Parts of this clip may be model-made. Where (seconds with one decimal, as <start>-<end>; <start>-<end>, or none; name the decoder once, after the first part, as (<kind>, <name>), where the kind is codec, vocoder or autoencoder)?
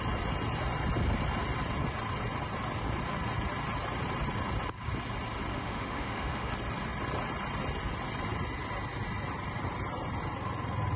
5.5-6.5 (autoencoder, DAC-VAE)